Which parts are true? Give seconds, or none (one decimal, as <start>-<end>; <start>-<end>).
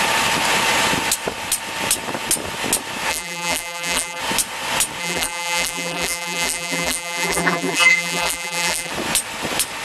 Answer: 0.0-3.1; 4.2-5.0; 8.9-9.8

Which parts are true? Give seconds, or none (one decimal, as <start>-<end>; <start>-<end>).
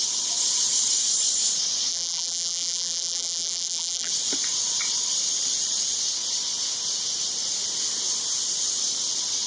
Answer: 0.0-1.9; 4.1-9.5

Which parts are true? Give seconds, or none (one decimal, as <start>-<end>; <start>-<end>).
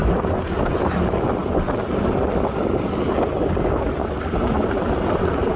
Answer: 0.6-5.6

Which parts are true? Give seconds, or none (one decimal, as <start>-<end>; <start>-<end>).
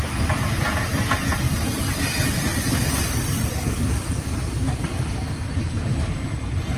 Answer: 0.0-6.8